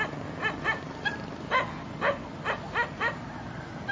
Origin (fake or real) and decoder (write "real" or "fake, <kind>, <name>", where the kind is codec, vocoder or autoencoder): real